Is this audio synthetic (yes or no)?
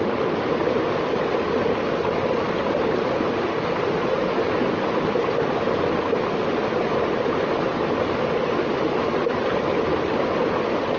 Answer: no